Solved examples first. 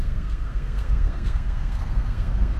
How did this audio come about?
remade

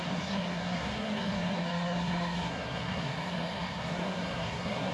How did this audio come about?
remade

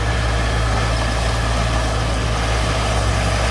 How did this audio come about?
recorded